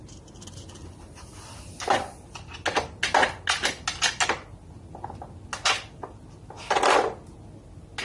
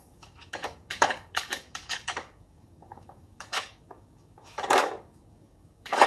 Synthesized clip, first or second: second